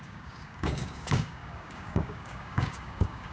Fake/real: fake